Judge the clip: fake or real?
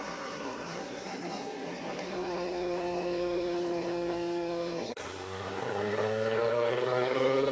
fake